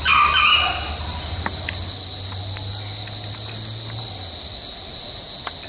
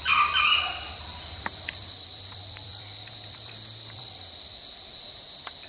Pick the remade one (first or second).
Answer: second